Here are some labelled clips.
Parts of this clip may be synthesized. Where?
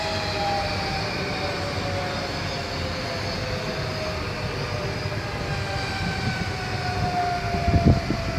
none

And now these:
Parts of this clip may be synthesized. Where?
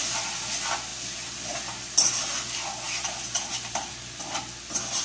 none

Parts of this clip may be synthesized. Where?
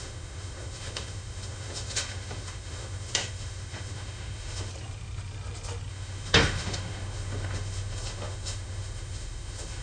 0.0-4.7; 5.9-9.8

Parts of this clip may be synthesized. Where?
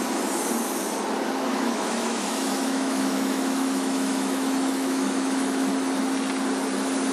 1.5-5.7